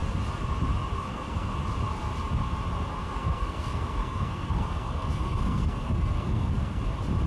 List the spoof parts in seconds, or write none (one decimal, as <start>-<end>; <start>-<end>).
1.1-1.6; 3.0-6.8